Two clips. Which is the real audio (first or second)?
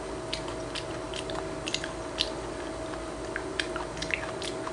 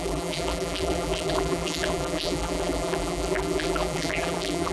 first